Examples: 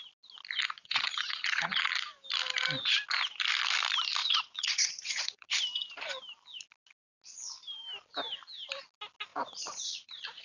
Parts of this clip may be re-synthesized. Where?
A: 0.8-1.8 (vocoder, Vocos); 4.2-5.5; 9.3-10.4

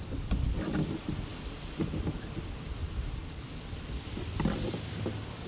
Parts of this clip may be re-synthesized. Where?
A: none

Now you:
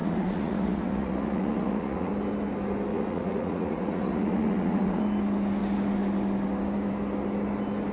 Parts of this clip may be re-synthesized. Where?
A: 0.0-2.1 (vocoder, Vocos); 2.9-5.0

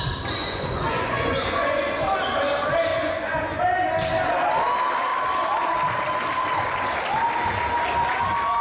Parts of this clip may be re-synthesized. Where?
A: 0.4-2.0 (vocoder, Vocos); 2.9-3.6

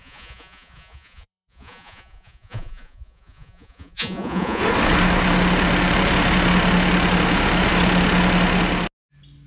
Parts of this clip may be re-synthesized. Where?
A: 0.0-4.6 (vocoder, Vocos)